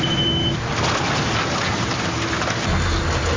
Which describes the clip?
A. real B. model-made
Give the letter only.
A